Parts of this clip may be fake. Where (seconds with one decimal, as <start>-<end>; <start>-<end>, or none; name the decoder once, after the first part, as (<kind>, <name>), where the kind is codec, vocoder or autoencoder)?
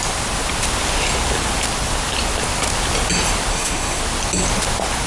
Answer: 3.5-4.0 (codec, SNAC)